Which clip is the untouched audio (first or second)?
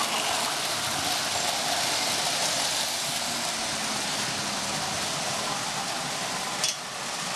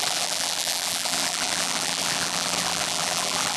first